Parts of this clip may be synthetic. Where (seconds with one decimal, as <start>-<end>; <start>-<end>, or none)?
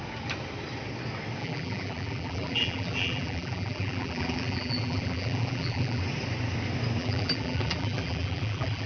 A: 1.4-6.0; 7.0-8.9